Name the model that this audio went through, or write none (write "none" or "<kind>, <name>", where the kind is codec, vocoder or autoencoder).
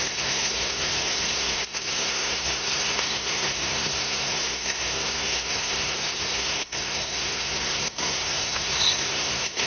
codec, SNAC